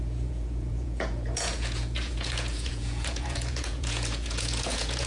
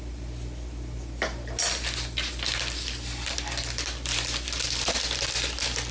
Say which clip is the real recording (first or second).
second